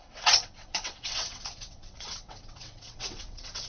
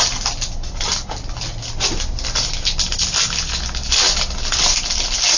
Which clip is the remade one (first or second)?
first